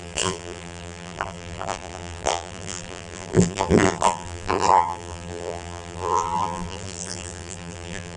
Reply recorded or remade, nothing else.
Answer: remade